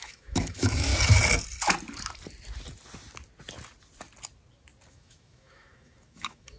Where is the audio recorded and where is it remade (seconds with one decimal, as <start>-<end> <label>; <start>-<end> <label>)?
0.0-0.9 remade; 0.9-4.9 recorded; 4.9-6.6 remade